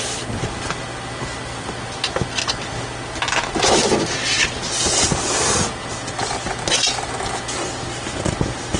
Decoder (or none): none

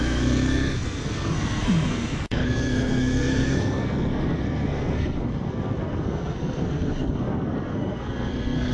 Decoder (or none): codec, SNAC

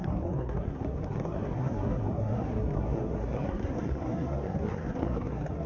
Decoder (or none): codec, SNAC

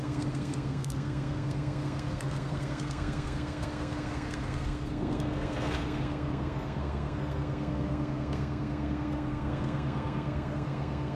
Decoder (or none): codec, SNAC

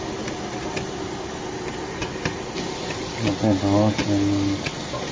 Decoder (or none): none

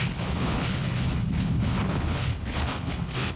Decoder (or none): codec, HILCodec